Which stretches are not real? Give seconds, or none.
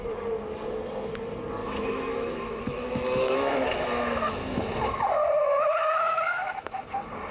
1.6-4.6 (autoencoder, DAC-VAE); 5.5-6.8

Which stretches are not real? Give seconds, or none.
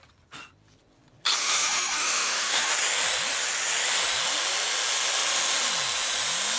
1.4-2.7 (autoencoder, DAC-VAE)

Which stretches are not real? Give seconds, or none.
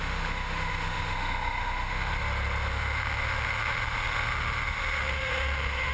0.0-2.1 (autoencoder, DAC-VAE); 2.7-5.9